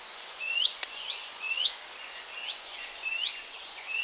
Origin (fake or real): fake